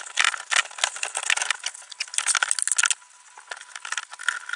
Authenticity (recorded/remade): recorded